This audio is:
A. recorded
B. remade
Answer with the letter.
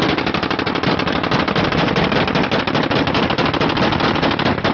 A